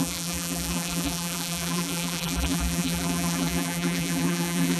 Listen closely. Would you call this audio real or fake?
fake